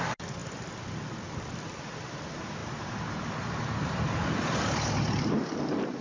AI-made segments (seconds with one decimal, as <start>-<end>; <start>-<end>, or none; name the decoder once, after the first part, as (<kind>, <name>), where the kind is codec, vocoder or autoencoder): 0.0-0.4 (vocoder, BigVGAN v2); 0.9-6.0